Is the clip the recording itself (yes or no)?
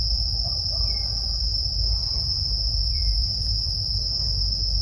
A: no